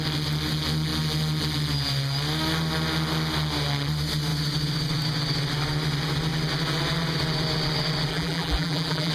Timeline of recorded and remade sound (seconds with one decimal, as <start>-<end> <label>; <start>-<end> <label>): 0.0-8.1 recorded; 8.1-9.1 remade